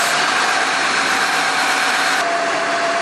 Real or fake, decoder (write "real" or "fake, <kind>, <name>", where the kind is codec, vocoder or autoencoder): fake, vocoder, BigVGAN v2